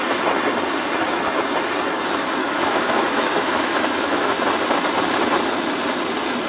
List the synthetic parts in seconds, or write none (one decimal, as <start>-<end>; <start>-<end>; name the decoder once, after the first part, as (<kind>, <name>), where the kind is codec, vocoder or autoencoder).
2.4-4.3 (autoencoder, DAC-VAE)